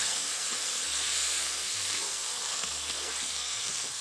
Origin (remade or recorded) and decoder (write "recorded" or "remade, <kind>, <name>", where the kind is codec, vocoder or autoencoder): remade, codec, SNAC